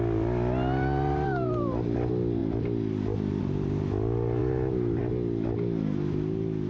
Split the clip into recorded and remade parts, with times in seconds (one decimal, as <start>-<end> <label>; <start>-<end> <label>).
0.0-6.7 recorded